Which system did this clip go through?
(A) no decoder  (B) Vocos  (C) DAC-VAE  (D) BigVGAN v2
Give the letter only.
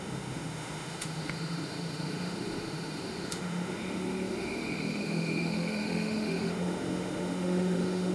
C